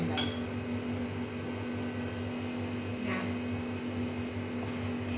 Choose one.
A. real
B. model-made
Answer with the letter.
A